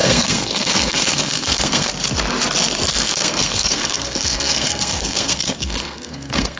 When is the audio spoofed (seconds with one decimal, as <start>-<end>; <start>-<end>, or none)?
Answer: 0.0-1.9; 2.9-6.6